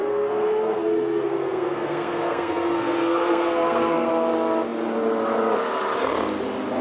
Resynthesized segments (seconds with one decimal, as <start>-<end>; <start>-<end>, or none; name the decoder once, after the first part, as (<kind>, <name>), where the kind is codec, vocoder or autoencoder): 0.0-4.1 (codec, SNAC)